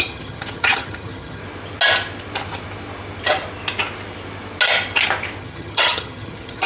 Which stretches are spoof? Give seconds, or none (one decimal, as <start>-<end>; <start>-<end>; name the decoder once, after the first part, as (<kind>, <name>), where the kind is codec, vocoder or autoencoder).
0.0-1.4 (vocoder, HiFi-GAN); 5.4-6.7

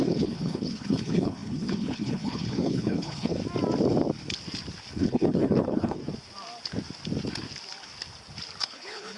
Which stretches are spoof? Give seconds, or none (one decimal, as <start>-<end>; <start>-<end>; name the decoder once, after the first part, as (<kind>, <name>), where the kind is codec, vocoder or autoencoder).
0.0-3.4 (codec, HILCodec); 4.9-6.0; 8.6-9.2

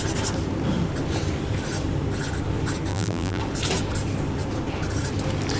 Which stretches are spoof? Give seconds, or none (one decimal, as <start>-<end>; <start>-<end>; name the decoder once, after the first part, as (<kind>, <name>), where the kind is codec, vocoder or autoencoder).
2.9-3.4 (vocoder, BigVGAN v2)

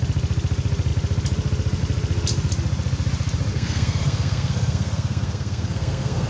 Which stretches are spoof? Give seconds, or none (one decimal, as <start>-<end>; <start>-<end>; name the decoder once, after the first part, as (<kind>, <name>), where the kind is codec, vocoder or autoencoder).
3.5-6.3 (codec, SNAC)

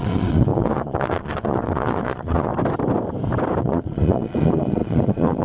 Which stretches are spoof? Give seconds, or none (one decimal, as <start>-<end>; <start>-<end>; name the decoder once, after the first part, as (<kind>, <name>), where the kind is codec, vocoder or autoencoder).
0.0-2.5 (vocoder, Vocos); 3.6-5.4